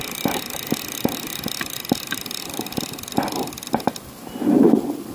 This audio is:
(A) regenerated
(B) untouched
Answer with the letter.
B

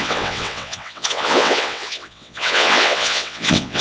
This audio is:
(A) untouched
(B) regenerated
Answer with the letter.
B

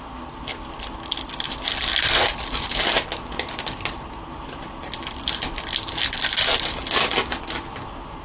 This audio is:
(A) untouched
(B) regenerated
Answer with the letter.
A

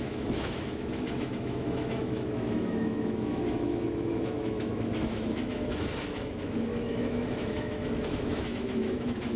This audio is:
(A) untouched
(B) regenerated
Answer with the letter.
B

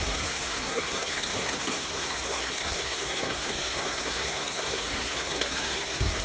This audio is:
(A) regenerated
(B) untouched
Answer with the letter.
A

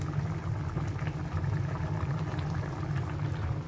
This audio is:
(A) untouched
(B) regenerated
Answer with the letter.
A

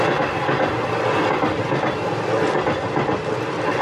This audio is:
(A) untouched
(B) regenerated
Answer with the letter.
A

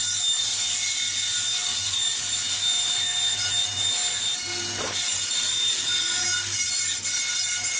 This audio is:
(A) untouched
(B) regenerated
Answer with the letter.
A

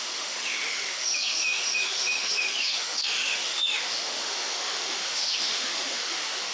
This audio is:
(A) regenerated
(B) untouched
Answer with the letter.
A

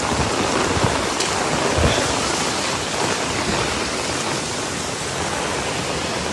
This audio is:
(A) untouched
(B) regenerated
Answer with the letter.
A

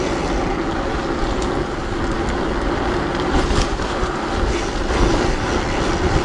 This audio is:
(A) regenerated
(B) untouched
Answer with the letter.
B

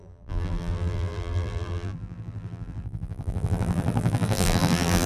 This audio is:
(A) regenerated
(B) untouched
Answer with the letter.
A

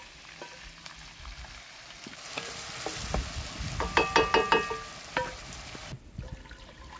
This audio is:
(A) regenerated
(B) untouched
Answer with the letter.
B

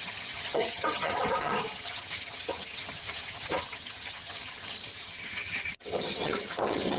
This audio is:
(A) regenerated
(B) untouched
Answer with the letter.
A